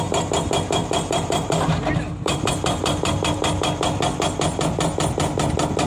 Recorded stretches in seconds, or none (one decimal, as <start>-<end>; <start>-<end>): 0.0-0.8; 2.5-5.9